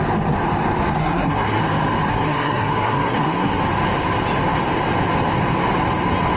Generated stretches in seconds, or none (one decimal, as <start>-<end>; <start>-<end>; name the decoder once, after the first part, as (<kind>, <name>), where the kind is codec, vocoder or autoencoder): 1.0-1.6 (codec, SNAC); 2.1-3.6